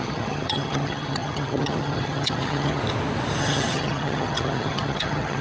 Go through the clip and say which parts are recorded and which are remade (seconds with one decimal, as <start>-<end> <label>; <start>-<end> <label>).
0.0-2.8 remade; 2.8-3.4 recorded; 3.4-5.4 remade